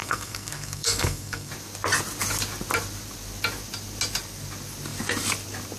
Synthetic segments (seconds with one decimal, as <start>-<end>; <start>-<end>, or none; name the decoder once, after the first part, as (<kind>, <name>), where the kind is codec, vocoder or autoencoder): 0.0-1.5 (codec, SNAC)